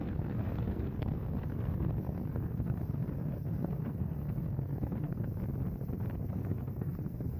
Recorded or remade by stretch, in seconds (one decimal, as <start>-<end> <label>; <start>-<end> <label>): 0.0-5.3 remade; 5.3-6.3 recorded; 6.3-7.4 remade